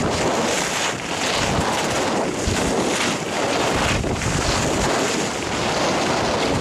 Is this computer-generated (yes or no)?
no